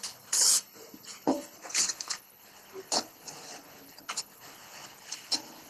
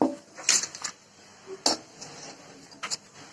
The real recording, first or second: second